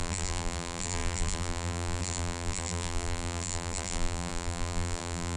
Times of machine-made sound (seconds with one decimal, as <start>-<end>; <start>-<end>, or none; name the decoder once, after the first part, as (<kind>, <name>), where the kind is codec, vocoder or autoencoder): 0.0-5.4 (vocoder, BigVGAN v2)